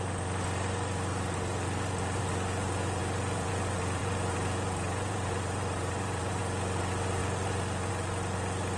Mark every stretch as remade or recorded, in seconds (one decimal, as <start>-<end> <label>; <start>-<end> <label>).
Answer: 0.0-1.1 recorded; 1.1-2.2 remade; 2.2-3.0 recorded; 3.0-3.5 remade; 3.5-4.0 recorded; 4.0-6.4 remade; 6.4-7.2 recorded; 7.2-7.9 remade; 7.9-8.8 recorded

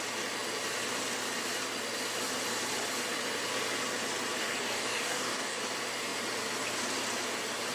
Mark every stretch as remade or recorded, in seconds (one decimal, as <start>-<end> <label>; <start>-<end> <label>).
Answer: 0.0-4.4 recorded; 4.4-5.6 remade; 5.6-7.7 recorded

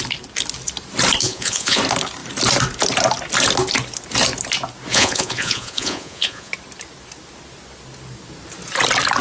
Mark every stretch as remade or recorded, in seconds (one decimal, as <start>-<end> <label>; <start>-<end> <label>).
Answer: 0.0-1.2 recorded; 1.2-1.8 remade; 1.8-4.9 recorded; 4.9-6.5 remade; 6.5-9.2 recorded

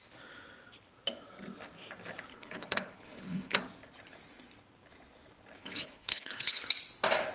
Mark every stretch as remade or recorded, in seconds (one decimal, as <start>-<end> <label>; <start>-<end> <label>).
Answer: 0.0-2.3 recorded; 2.3-3.6 remade; 3.6-5.6 recorded; 5.6-6.6 remade; 6.6-7.3 recorded

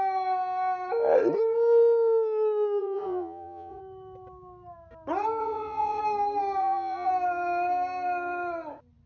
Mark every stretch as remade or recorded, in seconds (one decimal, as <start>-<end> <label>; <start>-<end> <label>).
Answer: 0.0-2.8 recorded; 2.8-3.8 remade; 3.8-5.4 recorded; 5.4-6.0 remade; 6.0-6.6 recorded; 6.6-7.1 remade; 7.1-9.1 recorded

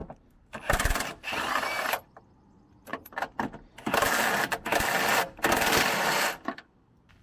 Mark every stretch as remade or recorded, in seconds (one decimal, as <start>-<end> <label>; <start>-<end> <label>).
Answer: 0.0-7.2 recorded